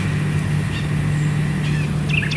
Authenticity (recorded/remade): recorded